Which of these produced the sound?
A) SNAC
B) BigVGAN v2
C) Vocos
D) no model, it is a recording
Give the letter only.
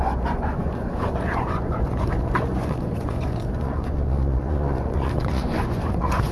C